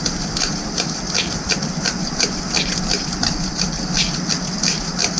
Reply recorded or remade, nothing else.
recorded